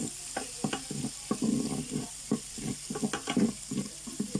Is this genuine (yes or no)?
yes